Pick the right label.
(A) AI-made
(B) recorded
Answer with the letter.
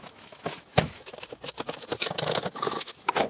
A